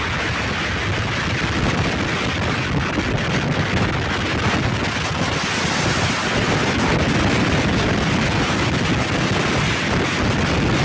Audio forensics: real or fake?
real